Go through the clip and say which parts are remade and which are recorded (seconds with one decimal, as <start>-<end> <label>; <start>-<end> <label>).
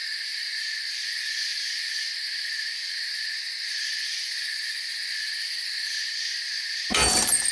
0.0-7.5 recorded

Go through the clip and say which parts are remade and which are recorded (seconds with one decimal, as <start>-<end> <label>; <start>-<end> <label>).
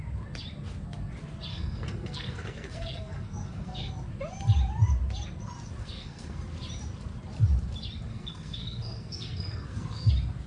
0.0-1.5 recorded; 1.5-3.9 remade; 3.9-5.8 recorded; 5.8-6.4 remade; 6.4-8.1 recorded; 8.1-10.1 remade; 10.1-10.5 recorded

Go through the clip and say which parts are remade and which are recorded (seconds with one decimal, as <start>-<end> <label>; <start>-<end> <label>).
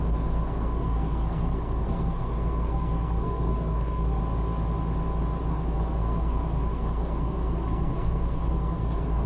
0.0-4.2 remade; 4.2-5.5 recorded; 5.5-9.3 remade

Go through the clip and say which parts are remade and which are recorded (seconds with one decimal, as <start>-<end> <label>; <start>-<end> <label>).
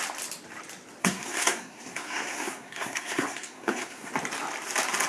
0.0-1.0 recorded; 1.0-4.1 remade; 4.1-5.1 recorded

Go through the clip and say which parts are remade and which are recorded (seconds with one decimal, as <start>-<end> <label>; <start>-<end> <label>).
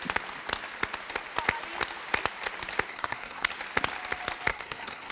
0.0-2.9 recorded; 2.9-3.5 remade; 3.5-4.5 recorded; 4.5-5.1 remade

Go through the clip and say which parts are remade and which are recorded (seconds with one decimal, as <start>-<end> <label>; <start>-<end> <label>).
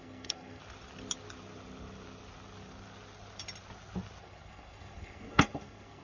0.0-0.6 remade; 0.6-4.2 recorded; 4.2-6.0 remade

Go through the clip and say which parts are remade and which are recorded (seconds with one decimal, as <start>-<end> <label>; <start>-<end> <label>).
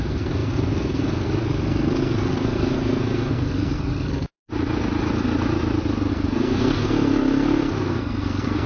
0.0-4.4 remade; 4.4-6.1 recorded; 6.1-8.7 remade